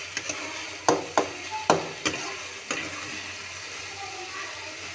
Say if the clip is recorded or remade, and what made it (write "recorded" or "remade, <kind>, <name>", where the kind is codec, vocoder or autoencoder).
recorded